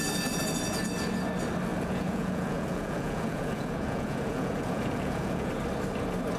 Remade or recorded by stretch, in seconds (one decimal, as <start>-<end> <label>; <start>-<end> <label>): 0.0-1.7 recorded; 1.7-5.5 remade; 5.5-6.4 recorded